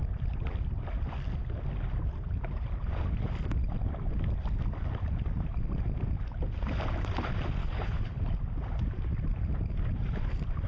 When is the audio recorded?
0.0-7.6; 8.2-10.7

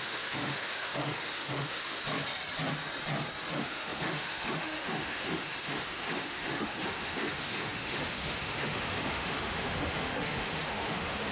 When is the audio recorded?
2.0-3.5

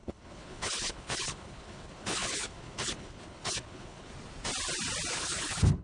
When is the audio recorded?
4.1-5.1

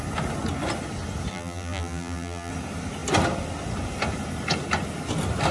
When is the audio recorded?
0.0-1.3; 2.5-5.5

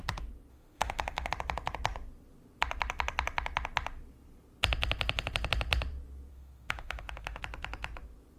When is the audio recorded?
0.0-0.5; 1.3-6.3; 7.4-8.4

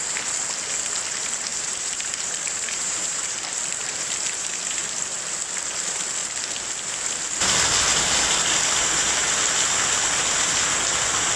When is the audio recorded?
0.0-1.5; 3.4-3.8; 4.5-11.4

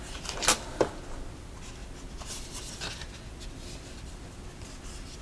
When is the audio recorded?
0.0-5.2